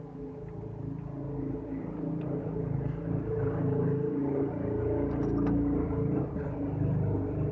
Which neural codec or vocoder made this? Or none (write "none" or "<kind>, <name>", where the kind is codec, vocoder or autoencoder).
none